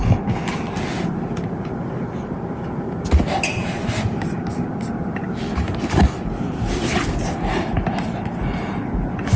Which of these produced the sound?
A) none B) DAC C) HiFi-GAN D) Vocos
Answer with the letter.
A